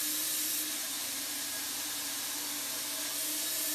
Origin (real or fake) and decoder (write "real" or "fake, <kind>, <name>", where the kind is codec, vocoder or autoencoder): real